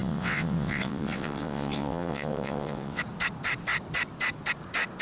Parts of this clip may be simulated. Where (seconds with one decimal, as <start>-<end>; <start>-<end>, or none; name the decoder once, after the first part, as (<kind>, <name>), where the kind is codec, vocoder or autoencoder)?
0.0-3.0 (vocoder, WaveNeXt)